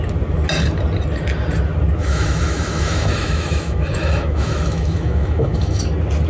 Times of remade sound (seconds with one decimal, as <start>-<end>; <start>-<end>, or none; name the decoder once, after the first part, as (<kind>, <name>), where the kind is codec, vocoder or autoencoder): 2.0-5.8 (autoencoder, DAC-VAE)